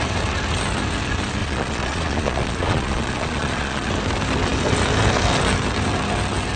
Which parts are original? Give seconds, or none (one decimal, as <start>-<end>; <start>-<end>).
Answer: 0.0-1.4; 3.9-6.6